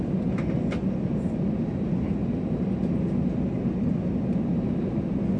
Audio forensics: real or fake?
real